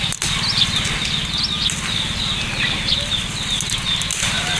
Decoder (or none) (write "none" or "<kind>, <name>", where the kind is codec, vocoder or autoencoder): none